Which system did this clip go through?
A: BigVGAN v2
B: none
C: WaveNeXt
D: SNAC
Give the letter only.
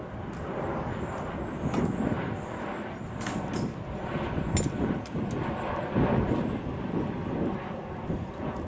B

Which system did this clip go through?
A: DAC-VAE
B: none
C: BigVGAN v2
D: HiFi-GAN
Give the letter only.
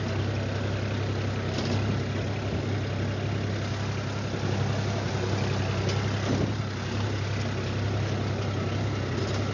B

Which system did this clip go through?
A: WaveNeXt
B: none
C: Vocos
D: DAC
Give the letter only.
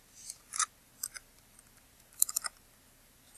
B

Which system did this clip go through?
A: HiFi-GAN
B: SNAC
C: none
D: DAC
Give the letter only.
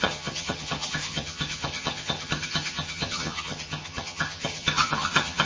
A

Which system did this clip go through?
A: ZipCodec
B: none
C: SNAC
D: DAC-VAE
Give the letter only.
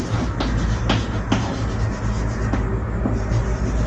B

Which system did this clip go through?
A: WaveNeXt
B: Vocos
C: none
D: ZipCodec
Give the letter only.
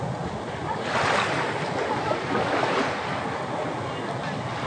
C